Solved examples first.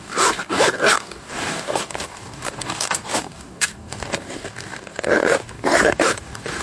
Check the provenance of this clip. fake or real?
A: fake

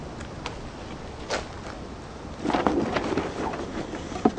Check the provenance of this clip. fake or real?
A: real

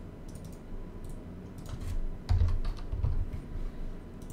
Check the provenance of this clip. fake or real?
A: real